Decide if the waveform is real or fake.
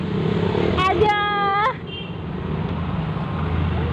real